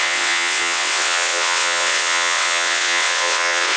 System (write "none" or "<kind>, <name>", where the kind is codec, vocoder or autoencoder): vocoder, WaveNeXt